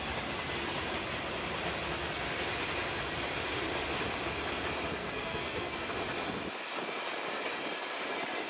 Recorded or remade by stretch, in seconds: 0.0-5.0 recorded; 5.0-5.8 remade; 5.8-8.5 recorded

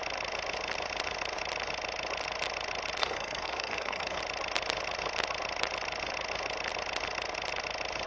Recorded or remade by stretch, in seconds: 0.0-3.0 recorded; 3.0-4.2 remade; 4.2-8.1 recorded

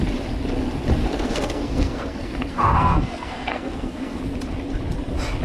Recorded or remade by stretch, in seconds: 0.0-1.0 recorded; 1.0-4.2 remade; 4.2-5.4 recorded